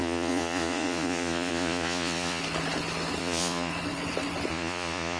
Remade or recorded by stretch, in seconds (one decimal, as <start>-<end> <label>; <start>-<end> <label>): 0.0-2.4 remade; 2.4-3.2 recorded; 3.2-3.7 remade; 3.7-4.5 recorded; 4.5-5.2 remade